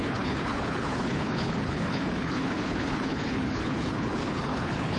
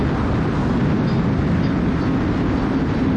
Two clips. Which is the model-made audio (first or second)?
first